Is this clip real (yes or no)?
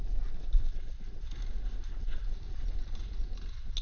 yes